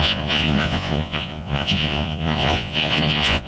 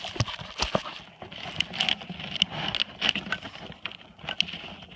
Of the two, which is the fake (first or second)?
first